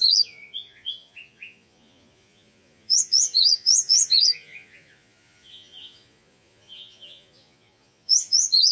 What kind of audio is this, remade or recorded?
remade